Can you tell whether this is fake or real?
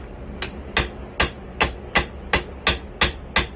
real